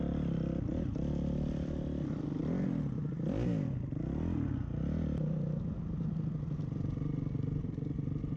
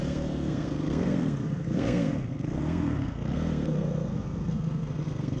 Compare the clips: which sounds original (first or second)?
first